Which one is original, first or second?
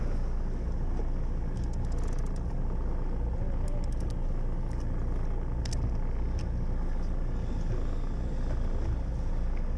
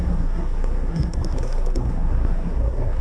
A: first